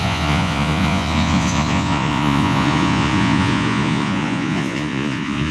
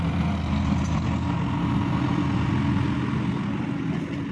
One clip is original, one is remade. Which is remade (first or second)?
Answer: first